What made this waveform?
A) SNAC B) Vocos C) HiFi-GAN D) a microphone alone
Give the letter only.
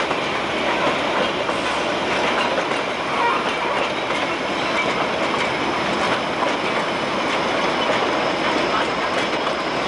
D